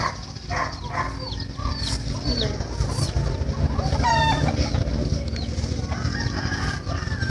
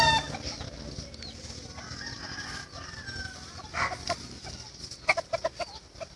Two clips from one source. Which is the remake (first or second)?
first